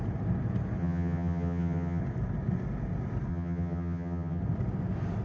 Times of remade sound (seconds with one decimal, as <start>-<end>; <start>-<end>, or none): 0.8-2.0; 3.3-4.4